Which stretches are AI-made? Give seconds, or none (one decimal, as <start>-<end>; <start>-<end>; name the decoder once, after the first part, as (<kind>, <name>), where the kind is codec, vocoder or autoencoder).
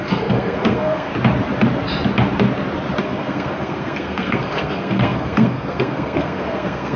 0.0-1.1 (codec, SNAC); 3.0-7.0